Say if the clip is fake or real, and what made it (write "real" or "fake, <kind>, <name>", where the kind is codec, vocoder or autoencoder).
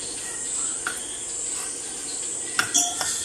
real